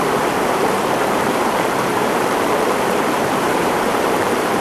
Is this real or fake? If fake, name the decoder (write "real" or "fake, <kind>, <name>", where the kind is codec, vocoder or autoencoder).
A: fake, vocoder, BigVGAN v2